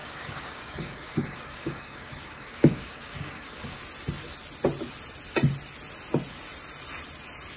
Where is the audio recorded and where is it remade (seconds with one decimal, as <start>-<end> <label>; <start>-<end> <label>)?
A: 0.0-3.8 remade; 3.8-7.6 recorded